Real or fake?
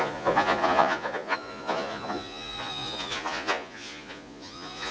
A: fake